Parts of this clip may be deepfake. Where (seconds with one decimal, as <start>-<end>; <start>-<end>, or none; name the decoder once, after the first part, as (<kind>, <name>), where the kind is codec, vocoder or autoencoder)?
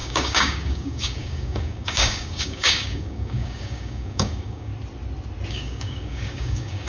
0.0-4.7 (codec, DAC); 5.5-6.9